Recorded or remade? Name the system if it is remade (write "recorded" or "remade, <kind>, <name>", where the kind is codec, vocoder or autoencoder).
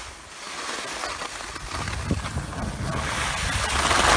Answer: recorded